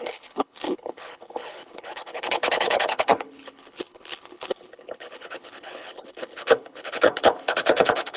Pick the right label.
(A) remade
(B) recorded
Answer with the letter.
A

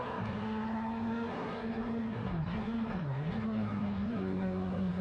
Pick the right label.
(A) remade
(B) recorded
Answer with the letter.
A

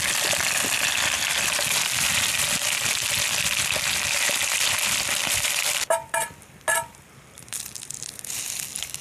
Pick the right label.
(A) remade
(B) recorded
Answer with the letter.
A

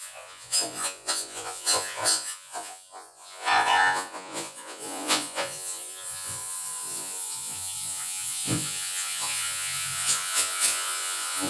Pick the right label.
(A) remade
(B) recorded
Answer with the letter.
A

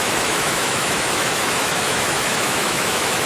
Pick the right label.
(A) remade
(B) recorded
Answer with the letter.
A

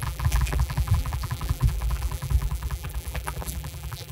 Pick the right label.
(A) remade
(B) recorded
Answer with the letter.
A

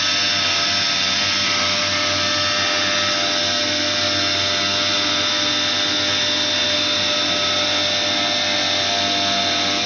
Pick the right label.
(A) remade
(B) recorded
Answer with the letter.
B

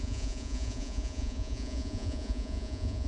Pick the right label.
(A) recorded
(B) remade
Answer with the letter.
B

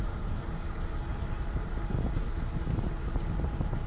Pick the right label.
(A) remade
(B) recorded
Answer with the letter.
B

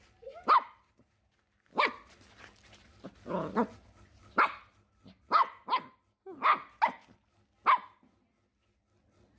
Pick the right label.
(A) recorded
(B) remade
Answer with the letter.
A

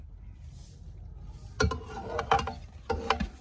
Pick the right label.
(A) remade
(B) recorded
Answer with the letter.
B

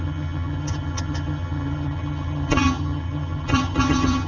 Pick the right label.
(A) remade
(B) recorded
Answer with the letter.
A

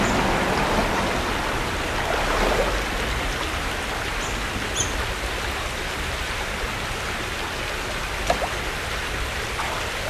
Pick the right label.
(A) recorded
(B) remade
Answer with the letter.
A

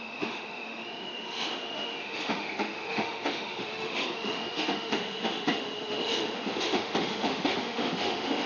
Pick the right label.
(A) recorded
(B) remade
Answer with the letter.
B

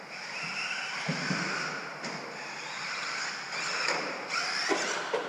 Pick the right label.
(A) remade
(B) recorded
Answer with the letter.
B